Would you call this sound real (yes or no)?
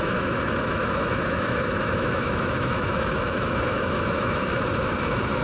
no